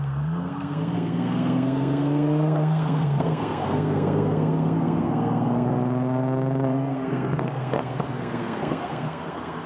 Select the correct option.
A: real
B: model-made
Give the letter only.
B